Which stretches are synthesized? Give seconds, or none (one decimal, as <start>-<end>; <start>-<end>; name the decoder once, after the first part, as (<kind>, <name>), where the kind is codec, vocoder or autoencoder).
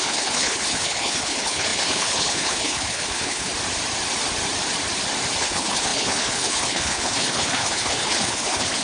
0.0-3.5 (codec, HILCodec); 5.4-8.8